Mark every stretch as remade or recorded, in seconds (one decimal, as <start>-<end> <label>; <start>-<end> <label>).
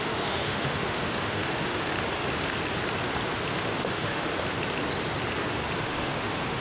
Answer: 0.0-1.9 remade; 1.9-3.5 recorded; 3.5-4.3 remade; 4.3-5.8 recorded; 5.8-6.6 remade